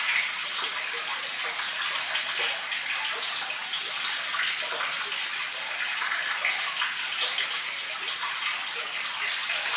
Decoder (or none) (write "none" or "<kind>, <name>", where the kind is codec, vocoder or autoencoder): none